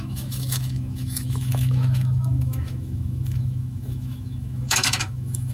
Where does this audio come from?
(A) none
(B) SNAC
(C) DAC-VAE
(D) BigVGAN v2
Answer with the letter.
C